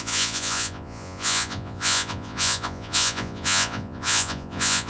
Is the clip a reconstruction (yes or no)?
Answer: yes